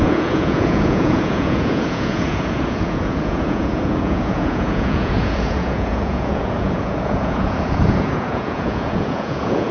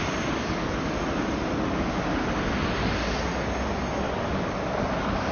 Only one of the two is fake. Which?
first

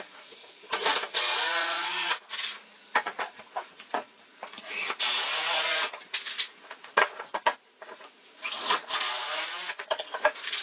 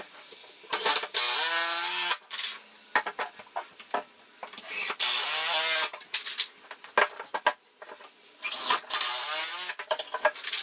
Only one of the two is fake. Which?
first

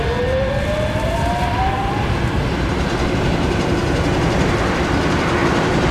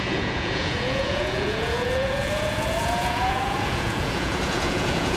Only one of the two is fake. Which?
second